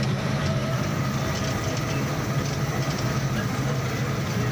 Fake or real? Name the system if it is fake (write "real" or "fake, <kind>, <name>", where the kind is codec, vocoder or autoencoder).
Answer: fake, vocoder, BigVGAN v2